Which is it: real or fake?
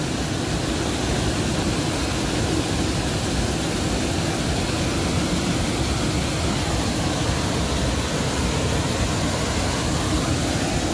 real